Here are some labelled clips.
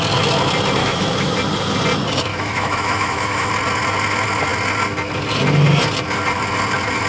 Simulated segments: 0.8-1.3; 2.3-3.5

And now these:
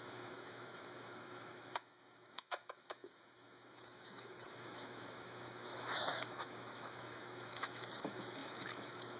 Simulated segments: 0.0-9.2

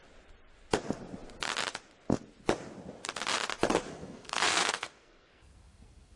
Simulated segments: 3.7-6.2

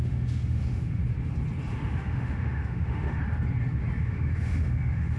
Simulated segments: 0.0-1.0; 1.7-3.2; 4.0-5.2

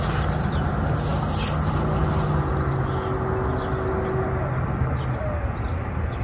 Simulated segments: none